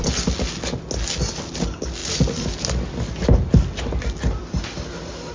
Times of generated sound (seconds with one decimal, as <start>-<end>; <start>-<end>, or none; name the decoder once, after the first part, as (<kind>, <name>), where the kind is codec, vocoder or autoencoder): none